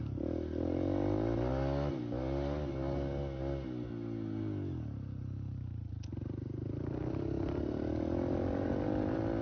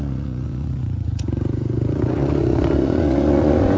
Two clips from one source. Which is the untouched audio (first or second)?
first